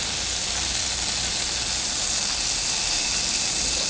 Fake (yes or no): no